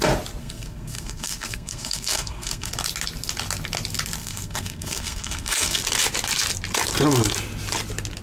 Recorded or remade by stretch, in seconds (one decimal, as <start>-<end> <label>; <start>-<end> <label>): 0.0-0.4 recorded; 0.4-2.7 remade; 2.7-4.2 recorded; 4.2-5.8 remade; 5.8-8.2 recorded